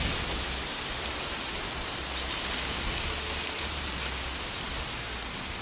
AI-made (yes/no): no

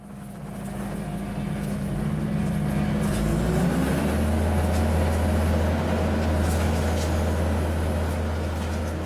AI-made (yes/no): no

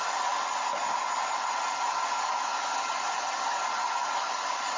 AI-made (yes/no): no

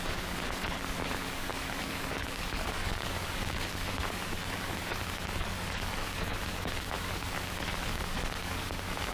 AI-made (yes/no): yes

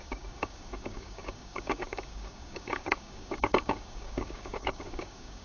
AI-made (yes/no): yes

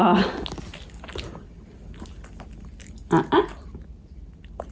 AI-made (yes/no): no